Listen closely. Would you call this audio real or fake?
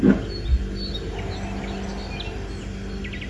real